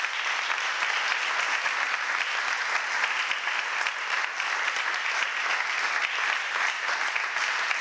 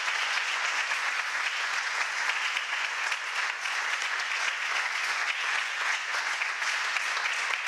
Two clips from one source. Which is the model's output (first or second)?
second